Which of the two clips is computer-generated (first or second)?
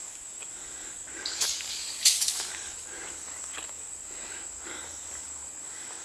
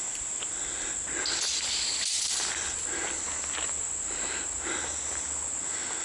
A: first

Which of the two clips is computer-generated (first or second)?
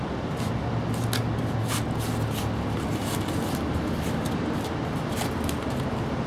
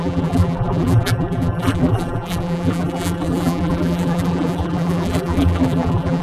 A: second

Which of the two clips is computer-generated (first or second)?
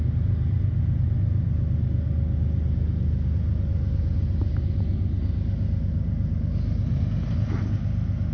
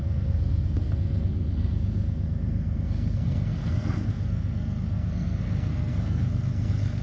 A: second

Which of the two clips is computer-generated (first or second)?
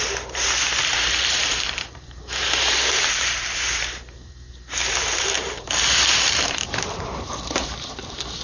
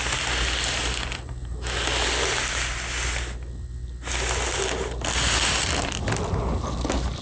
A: first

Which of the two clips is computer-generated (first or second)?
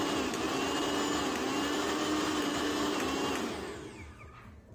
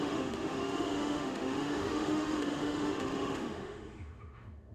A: second